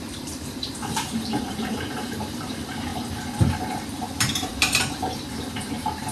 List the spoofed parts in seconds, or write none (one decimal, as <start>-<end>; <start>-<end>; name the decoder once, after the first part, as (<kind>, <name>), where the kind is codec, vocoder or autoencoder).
0.0-2.9 (vocoder, BigVGAN v2); 3.6-6.1